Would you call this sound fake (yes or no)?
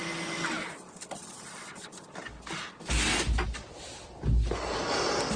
no